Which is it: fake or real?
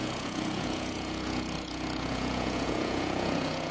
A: fake